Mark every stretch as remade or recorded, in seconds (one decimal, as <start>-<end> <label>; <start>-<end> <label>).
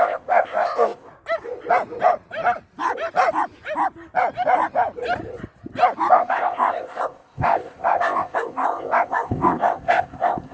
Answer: 0.0-1.1 remade; 1.1-6.1 recorded; 6.1-10.5 remade